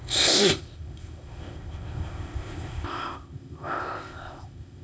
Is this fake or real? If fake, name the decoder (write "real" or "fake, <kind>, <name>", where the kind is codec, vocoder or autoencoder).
fake, codec, ZipCodec